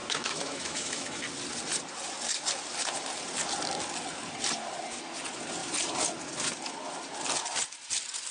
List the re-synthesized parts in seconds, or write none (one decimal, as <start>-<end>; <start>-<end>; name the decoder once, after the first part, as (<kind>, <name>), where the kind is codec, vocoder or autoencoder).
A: 0.0-1.2 (autoencoder, DAC-VAE)